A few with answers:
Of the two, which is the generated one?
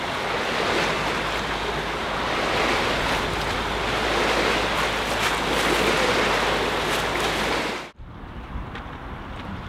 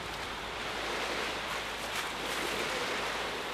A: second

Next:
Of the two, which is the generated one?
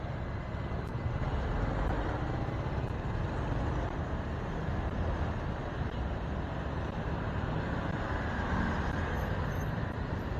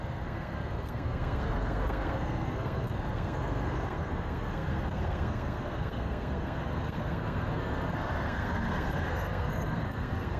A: second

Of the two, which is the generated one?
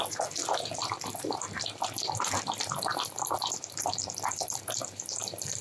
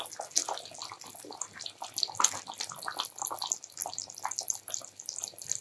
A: first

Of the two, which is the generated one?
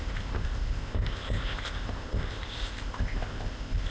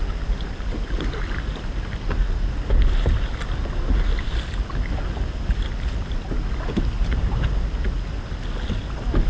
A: first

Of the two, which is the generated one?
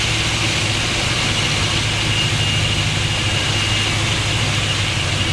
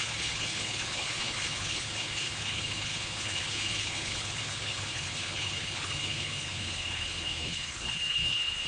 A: second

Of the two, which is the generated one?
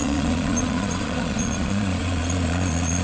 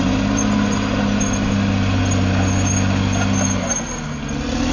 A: first